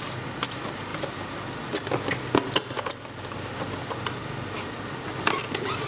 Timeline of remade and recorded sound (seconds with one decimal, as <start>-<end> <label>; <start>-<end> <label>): 0.0-5.9 recorded